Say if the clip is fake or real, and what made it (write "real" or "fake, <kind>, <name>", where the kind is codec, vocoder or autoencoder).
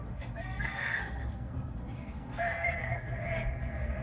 fake, codec, SNAC